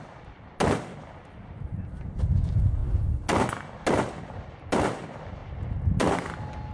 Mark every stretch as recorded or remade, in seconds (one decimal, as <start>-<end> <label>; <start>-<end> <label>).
0.0-6.7 recorded